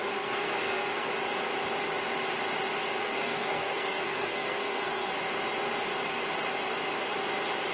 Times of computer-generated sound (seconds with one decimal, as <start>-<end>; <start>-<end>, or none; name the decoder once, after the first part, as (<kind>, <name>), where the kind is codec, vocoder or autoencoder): 0.0-1.1 (codec, SNAC); 3.0-5.1